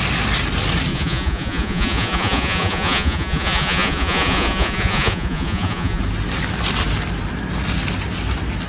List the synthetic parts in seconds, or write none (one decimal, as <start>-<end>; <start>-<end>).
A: 0.9-6.0